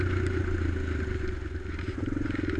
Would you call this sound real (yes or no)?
yes